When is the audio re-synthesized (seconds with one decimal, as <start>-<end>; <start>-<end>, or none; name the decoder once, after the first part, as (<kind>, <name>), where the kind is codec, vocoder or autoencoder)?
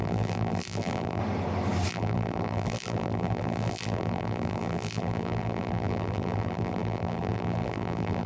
0.0-1.2 (vocoder, BigVGAN v2); 1.9-8.3